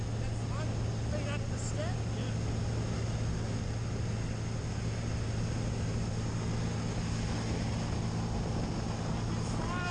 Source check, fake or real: real